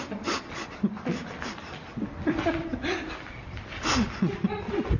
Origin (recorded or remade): recorded